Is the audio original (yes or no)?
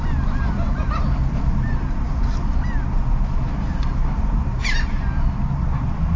yes